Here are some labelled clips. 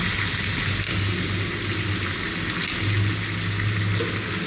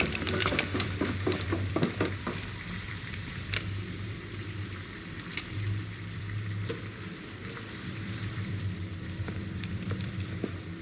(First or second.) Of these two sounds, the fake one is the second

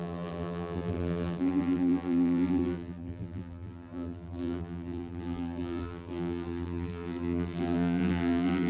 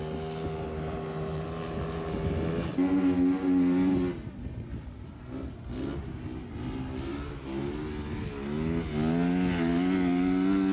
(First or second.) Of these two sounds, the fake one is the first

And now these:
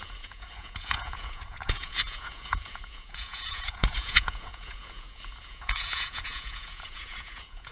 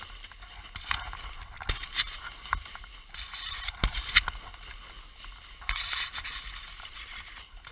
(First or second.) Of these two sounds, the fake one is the first